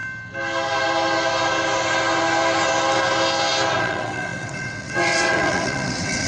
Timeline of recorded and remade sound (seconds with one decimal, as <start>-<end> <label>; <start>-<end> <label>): 0.0-3.8 recorded; 3.8-6.3 remade